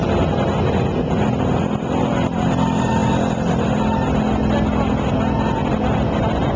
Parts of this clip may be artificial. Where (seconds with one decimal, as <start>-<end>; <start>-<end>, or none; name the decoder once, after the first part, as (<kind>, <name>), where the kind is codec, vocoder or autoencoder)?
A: none